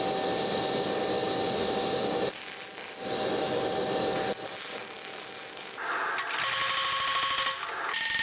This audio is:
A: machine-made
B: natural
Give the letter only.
B